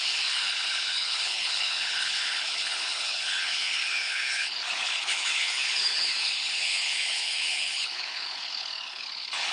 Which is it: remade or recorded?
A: remade